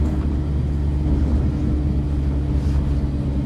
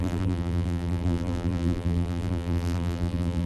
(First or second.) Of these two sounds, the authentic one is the first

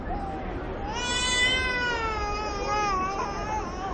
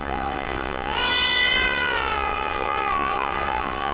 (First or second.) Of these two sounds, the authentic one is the first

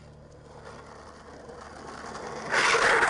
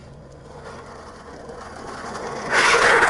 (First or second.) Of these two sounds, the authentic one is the first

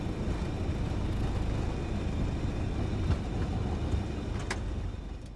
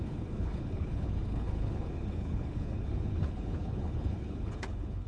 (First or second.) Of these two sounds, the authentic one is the first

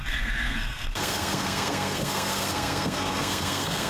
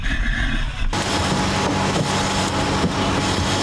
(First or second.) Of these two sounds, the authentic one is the second